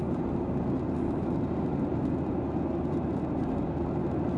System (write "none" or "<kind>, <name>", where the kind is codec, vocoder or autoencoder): none